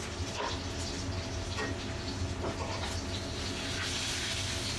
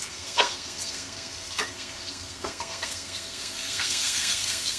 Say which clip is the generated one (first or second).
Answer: second